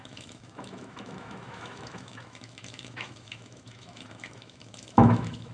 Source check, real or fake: fake